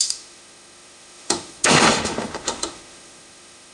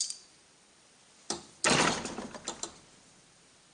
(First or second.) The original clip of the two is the second